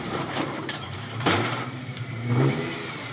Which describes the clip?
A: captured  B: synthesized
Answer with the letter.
B